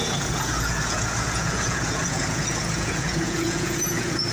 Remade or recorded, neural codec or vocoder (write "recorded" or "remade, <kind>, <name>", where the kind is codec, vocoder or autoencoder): remade, vocoder, Vocos